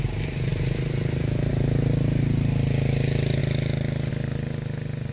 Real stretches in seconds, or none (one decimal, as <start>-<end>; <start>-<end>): 0.0-5.1